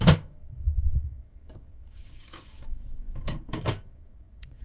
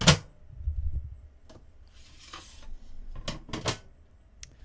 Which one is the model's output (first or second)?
first